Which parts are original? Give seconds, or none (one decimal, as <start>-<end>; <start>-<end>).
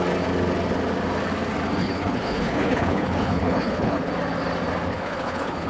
0.0-1.8; 4.1-4.9